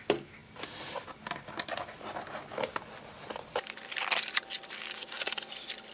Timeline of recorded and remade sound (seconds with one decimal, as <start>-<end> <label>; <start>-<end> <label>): 0.0-5.9 recorded

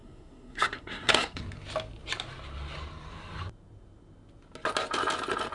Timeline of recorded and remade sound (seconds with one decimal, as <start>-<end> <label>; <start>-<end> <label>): 0.0-1.4 remade; 1.4-5.5 recorded

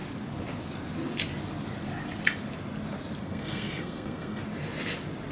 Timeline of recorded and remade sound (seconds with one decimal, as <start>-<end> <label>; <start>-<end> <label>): 0.0-3.2 recorded; 3.2-4.4 remade; 4.4-5.3 recorded

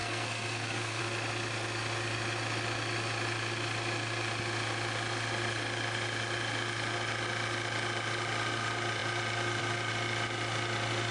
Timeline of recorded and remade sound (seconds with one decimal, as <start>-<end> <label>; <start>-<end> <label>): 0.0-1.0 remade; 1.0-11.1 recorded

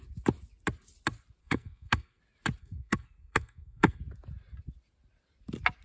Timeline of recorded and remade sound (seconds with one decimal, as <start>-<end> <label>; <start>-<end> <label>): 0.0-1.4 recorded; 1.4-2.2 remade; 2.2-2.6 recorded; 2.6-4.0 remade; 4.0-5.8 recorded